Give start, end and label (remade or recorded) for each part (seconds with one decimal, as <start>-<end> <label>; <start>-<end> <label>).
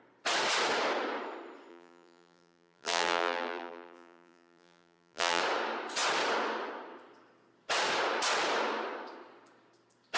0.0-1.7 recorded; 1.7-5.4 remade; 5.4-10.2 recorded